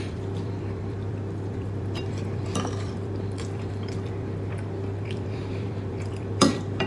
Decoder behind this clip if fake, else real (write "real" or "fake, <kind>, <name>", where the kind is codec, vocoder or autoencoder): fake, vocoder, BigVGAN v2